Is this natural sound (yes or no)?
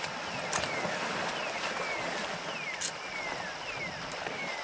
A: yes